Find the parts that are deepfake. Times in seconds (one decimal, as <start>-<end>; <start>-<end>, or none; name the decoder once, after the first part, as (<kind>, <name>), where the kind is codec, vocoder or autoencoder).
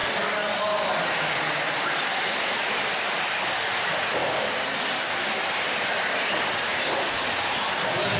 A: none